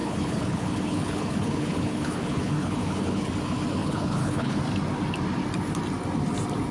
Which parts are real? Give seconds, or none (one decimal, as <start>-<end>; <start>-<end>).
3.3-3.8; 4.6-6.7